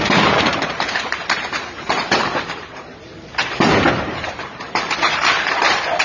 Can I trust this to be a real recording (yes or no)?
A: no